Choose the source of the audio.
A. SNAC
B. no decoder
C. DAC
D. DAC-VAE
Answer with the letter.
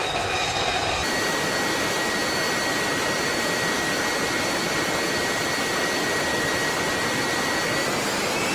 B